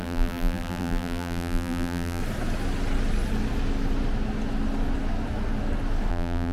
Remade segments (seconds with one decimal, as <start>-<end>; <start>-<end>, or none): 0.0-2.2; 6.1-6.5